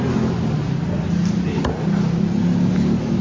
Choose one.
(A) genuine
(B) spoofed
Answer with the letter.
A